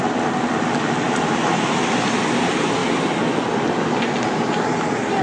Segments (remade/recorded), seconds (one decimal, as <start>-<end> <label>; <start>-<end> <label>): 0.0-5.2 recorded